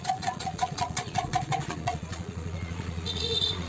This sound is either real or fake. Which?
fake